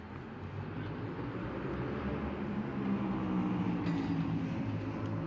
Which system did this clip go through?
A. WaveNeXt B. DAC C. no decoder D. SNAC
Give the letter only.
C